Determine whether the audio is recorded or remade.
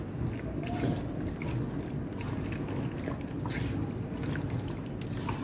recorded